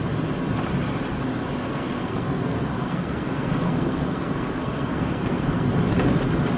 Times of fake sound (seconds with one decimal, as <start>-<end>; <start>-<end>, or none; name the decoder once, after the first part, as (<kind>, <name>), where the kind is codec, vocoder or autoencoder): 1.7-5.7 (codec, SNAC)